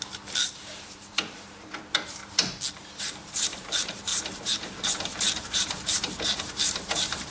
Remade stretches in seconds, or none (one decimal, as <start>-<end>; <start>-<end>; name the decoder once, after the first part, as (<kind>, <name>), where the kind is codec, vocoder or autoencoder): 0.0-2.2 (vocoder, BigVGAN v2); 2.7-7.3